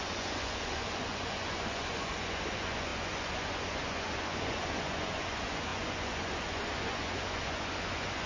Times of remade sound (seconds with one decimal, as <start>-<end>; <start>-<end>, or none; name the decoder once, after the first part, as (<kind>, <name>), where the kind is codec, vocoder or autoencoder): 0.0-8.3 (vocoder, Vocos)